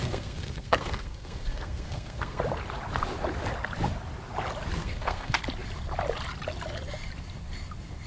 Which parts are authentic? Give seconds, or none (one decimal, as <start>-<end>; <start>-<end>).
2.4-4.8; 5.4-8.1